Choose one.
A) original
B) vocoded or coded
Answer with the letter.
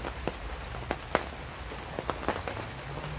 A